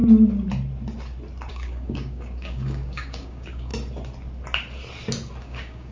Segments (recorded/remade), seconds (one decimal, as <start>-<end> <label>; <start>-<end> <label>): 0.0-1.5 recorded; 1.5-3.7 remade; 3.7-5.4 recorded; 5.4-5.9 remade